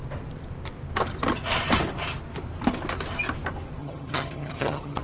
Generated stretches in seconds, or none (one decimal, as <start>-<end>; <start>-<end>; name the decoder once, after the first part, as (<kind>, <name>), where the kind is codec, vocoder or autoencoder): 3.8-5.0 (vocoder, HiFi-GAN)

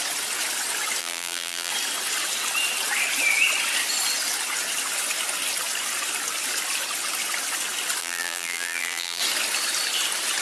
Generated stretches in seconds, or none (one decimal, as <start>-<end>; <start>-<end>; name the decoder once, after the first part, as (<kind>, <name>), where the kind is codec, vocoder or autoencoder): 1.0-1.7 (vocoder, BigVGAN v2); 8.0-9.2

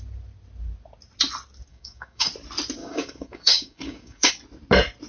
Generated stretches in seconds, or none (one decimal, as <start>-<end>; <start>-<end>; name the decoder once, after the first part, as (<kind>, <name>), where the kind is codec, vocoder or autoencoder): 1.7-2.3 (codec, DAC); 2.8-4.3